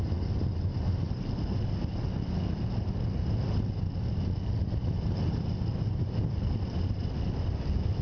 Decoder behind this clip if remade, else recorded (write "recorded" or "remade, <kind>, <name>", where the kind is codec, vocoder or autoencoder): recorded